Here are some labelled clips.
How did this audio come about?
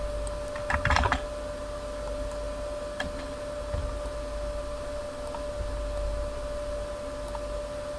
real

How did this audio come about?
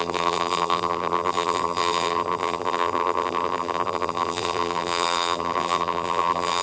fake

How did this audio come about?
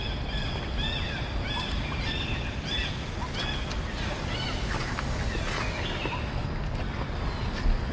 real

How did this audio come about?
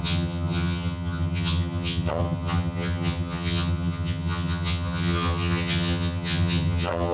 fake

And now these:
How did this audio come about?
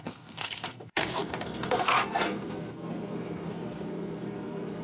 fake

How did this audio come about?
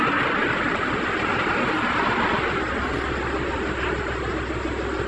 real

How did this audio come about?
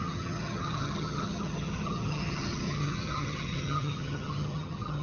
fake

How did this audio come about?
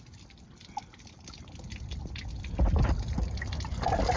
real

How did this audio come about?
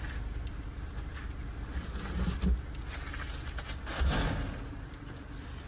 real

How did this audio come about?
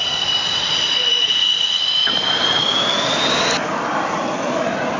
real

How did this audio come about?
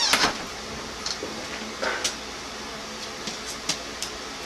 real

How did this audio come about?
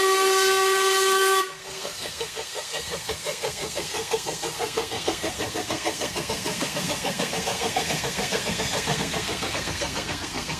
fake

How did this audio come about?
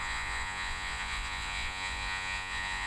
fake